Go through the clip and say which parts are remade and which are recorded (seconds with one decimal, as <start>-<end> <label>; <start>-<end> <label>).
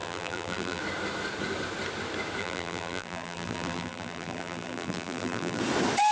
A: 0.0-0.8 remade; 0.8-2.4 recorded; 2.4-5.6 remade; 5.6-6.1 recorded